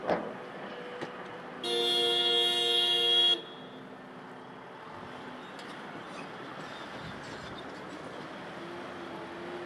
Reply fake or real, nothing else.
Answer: real